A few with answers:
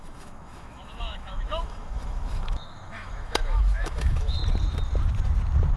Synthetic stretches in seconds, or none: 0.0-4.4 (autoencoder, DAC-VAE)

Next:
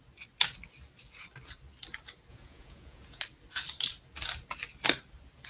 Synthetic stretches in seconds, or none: 2.3-3.2 (vocoder, Vocos)

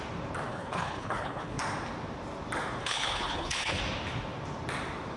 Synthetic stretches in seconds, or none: 0.5-1.6 (codec, HILCodec); 2.8-3.8

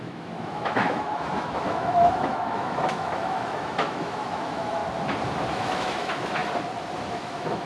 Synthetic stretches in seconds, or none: 0.0-4.8 (autoencoder, DAC-VAE); 5.5-6.4; 7.1-7.7